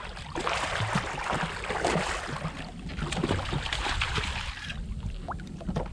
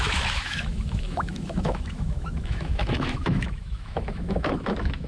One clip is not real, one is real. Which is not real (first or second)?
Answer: second